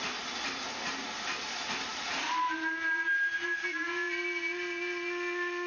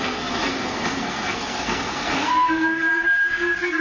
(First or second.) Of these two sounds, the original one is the first